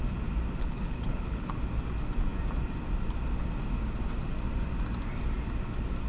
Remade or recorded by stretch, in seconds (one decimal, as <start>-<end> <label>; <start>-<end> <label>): 0.0-0.6 recorded; 0.6-1.5 remade; 1.5-6.1 recorded